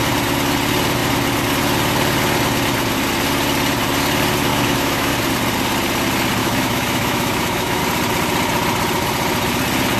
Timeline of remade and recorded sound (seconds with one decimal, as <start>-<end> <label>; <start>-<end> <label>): 0.0-4.5 recorded; 4.5-5.1 remade; 5.1-6.4 recorded; 6.4-7.8 remade; 7.8-10.0 recorded